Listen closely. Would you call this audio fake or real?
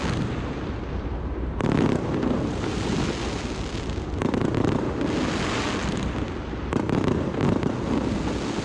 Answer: real